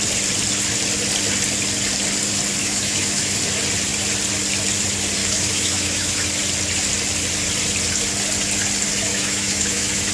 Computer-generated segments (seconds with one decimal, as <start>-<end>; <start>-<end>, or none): 2.6-3.4; 5.2-6.3; 9.1-10.1